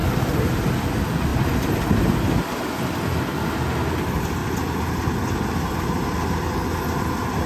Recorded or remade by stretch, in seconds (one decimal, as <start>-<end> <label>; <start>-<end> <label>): 0.0-7.5 recorded